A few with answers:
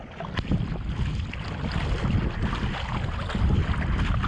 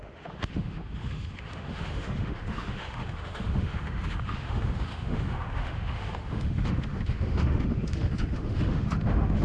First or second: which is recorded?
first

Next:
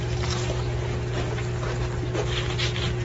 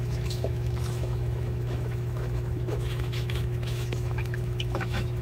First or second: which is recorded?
first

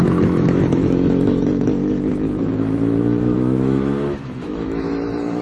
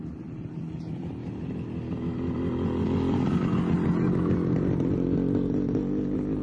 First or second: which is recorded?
second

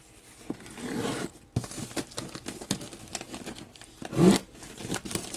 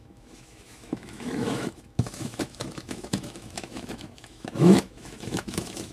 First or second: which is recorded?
first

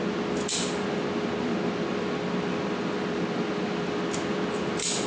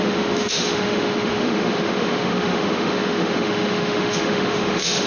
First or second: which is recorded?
first